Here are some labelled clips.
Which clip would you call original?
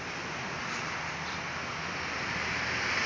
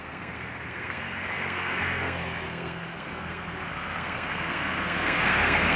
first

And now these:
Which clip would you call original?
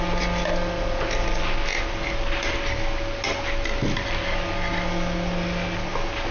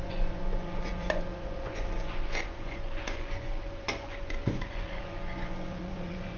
first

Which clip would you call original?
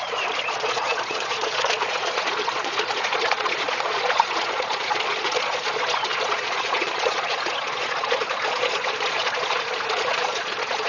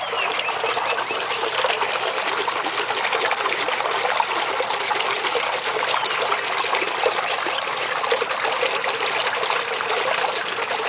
second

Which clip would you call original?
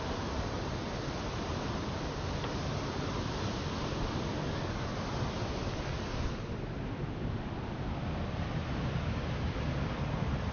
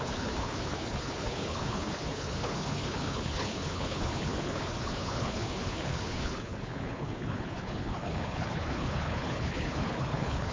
first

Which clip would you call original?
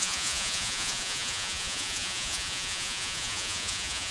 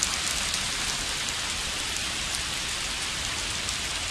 second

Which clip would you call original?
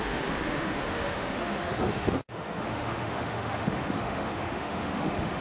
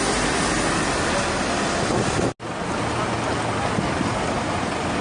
second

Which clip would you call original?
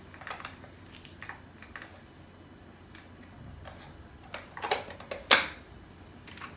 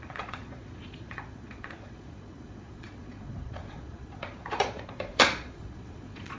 first